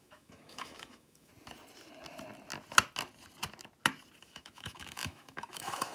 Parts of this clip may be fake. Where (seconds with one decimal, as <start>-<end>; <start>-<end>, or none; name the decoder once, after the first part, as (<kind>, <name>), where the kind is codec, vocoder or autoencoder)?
0.0-1.3 (autoencoder, DAC-VAE); 4.2-5.9